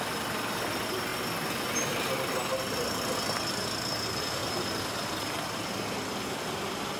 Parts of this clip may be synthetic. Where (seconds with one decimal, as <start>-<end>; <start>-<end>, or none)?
none

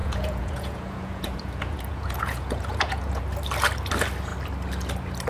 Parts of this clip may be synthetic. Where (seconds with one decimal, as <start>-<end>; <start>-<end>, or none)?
0.0-3.2

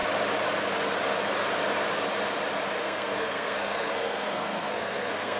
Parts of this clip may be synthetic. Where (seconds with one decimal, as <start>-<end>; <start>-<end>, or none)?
2.8-5.4

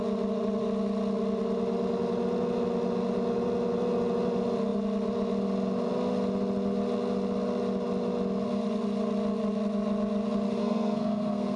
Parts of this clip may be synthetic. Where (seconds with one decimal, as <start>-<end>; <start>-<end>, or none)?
10.6-11.6

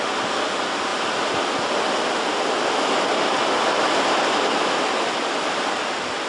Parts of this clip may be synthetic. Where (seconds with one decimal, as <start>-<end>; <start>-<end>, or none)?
none

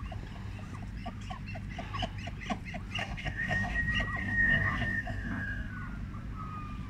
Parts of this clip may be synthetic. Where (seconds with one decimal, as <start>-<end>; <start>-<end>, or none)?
3.0-3.8; 4.2-5.7